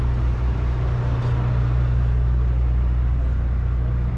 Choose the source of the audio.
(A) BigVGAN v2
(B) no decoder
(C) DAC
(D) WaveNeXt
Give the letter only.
B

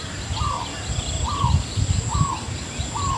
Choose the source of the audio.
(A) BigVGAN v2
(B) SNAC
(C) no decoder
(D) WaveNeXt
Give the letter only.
C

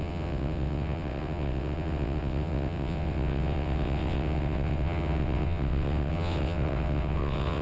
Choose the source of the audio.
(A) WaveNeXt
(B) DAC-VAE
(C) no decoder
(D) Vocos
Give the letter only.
A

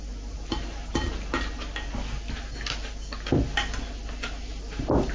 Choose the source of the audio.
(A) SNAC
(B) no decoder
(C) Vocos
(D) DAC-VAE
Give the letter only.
B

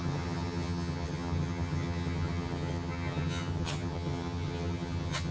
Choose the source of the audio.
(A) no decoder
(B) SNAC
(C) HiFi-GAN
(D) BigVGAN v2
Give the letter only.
C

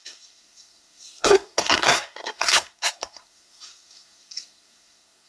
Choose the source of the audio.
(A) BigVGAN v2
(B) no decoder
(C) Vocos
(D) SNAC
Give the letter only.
D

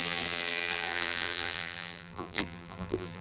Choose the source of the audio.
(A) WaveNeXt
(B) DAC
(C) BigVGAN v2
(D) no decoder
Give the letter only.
C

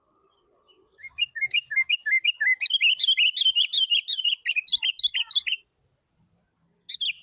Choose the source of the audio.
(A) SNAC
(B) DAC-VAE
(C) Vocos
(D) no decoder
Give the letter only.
D